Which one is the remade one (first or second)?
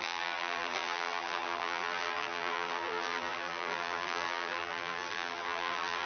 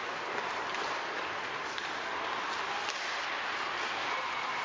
first